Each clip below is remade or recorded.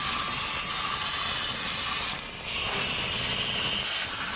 recorded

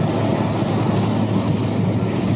recorded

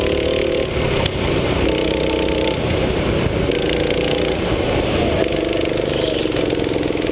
recorded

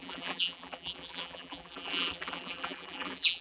remade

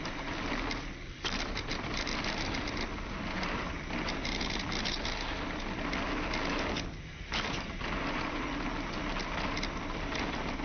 recorded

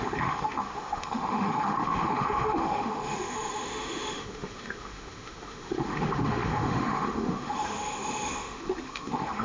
remade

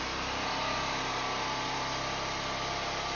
recorded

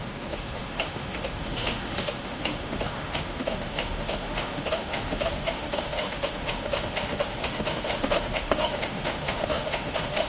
remade